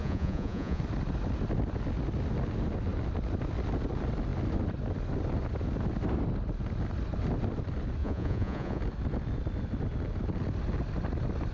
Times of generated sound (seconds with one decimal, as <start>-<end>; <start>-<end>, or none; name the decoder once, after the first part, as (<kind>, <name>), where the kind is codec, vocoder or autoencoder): 0.0-0.8 (vocoder, Vocos); 8.0-8.8